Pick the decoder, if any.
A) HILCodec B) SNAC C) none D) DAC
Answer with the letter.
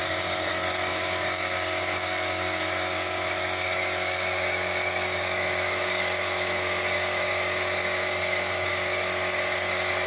D